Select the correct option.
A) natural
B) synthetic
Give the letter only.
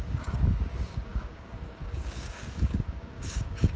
B